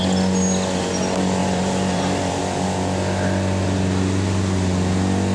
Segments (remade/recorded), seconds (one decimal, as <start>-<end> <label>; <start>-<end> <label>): 0.0-1.4 recorded; 1.4-2.4 remade; 2.4-5.3 recorded